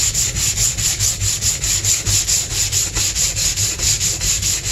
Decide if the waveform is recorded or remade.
recorded